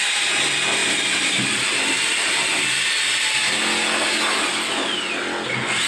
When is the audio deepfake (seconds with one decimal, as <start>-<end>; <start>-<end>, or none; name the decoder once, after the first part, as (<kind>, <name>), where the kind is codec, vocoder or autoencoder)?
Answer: none

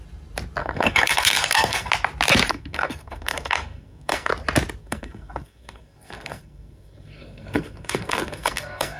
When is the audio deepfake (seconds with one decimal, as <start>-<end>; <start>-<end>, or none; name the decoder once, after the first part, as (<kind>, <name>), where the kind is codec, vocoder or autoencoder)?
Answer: 0.6-1.9 (codec, SNAC); 2.5-4.3; 4.8-9.0

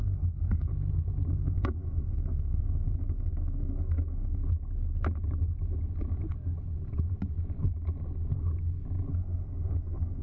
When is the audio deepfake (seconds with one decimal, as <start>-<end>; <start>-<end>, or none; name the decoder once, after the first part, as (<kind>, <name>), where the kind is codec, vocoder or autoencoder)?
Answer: 0.0-0.7 (codec, SNAC); 1.3-4.4; 9.1-10.2